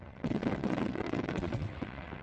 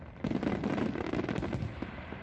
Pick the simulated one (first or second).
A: first